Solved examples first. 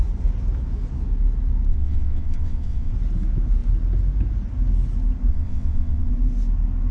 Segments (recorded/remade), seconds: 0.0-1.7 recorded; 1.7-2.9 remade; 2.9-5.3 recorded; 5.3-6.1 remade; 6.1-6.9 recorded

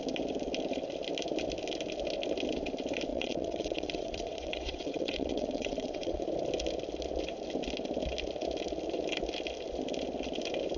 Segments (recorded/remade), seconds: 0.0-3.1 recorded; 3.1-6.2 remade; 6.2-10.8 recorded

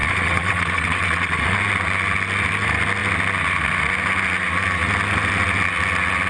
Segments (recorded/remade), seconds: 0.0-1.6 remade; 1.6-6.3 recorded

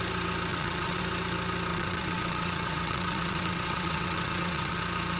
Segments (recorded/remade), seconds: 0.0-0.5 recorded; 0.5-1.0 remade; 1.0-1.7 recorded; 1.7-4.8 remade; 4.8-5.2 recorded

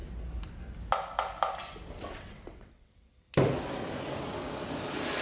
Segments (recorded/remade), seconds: 0.0-2.0 recorded; 2.0-3.1 remade; 3.1-5.2 recorded

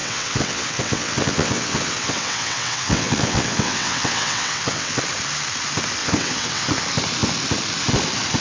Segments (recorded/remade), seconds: 0.0-5.0 remade; 5.0-6.0 recorded; 6.0-6.7 remade; 6.7-8.4 recorded